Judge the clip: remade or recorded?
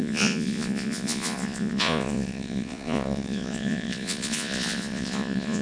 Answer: remade